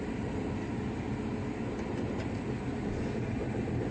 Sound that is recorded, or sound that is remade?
recorded